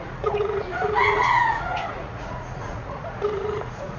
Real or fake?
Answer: fake